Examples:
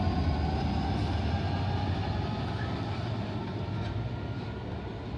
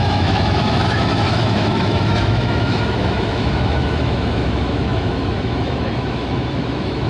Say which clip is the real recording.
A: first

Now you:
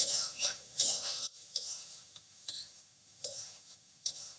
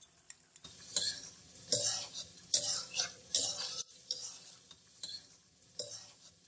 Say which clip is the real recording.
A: second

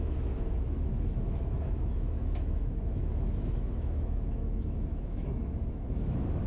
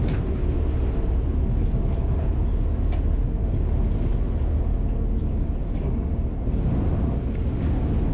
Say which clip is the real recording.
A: second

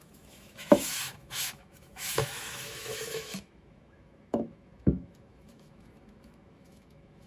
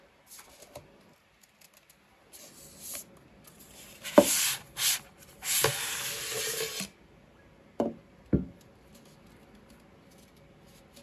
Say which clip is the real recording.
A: second